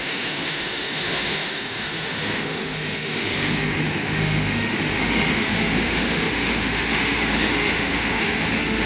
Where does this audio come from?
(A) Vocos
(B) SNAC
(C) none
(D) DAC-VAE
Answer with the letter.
D